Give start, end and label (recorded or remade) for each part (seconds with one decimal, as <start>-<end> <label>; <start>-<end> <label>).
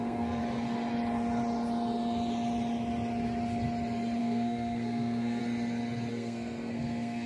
0.0-0.4 remade; 0.4-4.2 recorded; 4.2-5.4 remade; 5.4-6.1 recorded; 6.1-7.3 remade